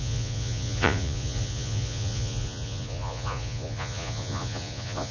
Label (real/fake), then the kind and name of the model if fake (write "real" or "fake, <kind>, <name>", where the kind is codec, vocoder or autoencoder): fake, vocoder, Vocos